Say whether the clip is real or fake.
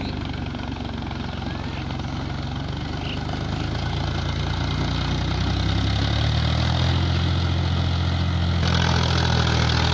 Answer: real